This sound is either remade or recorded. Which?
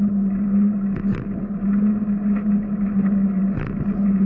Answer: recorded